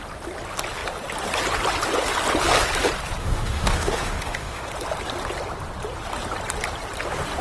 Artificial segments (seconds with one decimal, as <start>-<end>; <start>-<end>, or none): 3.2-4.7

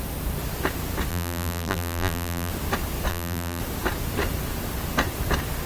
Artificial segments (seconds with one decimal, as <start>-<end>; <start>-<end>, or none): 1.1-2.5; 3.1-3.6

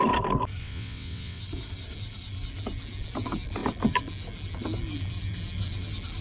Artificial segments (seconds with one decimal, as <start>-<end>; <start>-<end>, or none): 0.6-1.4

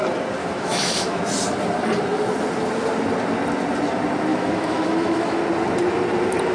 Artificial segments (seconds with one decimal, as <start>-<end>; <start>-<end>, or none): 0.4-1.2; 4.3-5.4